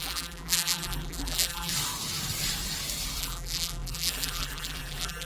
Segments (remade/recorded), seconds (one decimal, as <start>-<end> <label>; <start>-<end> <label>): 0.0-1.7 remade; 1.7-3.2 recorded; 3.2-5.2 remade